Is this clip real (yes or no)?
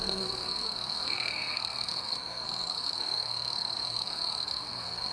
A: no